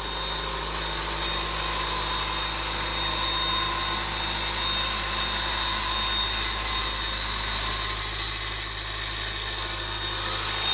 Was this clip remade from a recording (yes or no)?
no